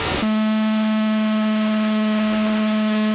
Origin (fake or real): fake